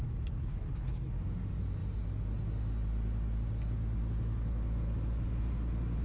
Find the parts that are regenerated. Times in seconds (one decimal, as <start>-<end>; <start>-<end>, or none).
0.4-1.1

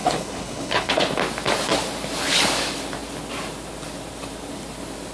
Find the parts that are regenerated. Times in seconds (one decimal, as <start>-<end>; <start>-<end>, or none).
0.0-0.9

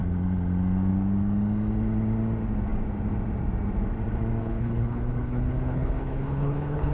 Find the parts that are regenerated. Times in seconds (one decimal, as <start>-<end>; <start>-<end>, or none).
4.4-6.9

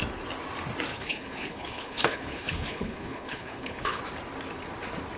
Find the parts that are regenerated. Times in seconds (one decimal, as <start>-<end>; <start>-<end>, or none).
0.9-4.0